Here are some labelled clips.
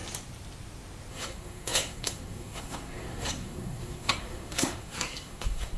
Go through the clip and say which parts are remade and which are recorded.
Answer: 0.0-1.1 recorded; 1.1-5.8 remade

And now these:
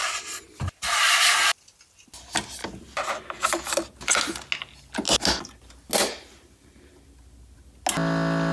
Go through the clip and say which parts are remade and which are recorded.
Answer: 0.0-8.5 recorded

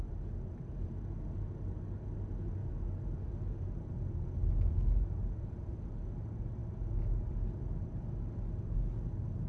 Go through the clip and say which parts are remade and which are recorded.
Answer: 0.0-9.5 recorded

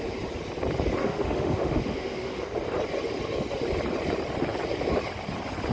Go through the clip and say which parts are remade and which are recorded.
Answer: 0.0-1.0 recorded; 1.0-2.4 remade; 2.4-5.7 recorded

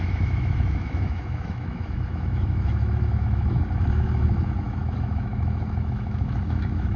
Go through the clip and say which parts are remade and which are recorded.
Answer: 0.0-7.0 remade